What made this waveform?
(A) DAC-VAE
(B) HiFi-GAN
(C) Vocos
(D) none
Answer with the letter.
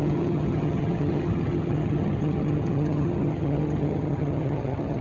B